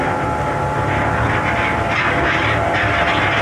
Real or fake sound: real